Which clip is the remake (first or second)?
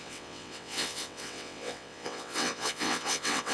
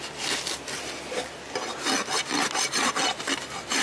first